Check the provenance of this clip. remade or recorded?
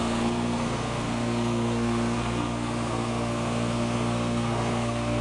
remade